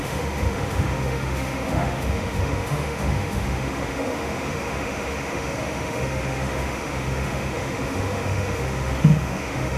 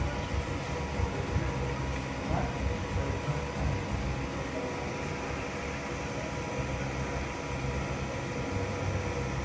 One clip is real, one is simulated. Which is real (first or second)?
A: second